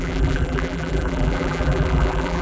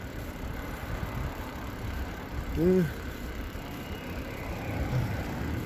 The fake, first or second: first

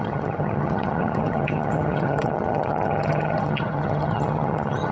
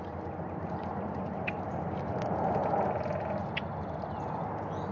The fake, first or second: first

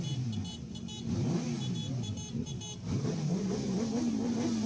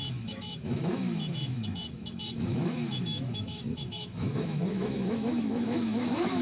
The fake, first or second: second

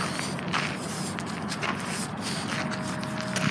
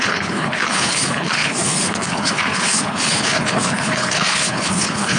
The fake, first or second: second